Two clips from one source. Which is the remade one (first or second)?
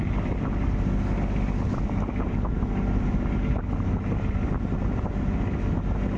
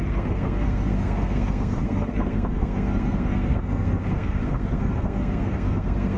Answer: second